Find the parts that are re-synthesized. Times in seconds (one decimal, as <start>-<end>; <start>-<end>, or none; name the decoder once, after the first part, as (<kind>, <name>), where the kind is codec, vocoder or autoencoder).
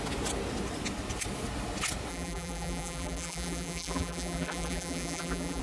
2.1-5.6 (vocoder, BigVGAN v2)